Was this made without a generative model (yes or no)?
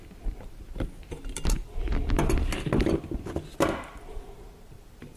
yes